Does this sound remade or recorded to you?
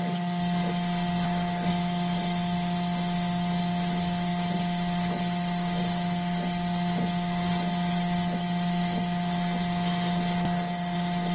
recorded